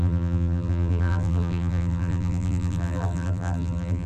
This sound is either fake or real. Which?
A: fake